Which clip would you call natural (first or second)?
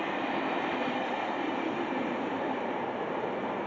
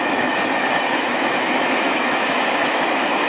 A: first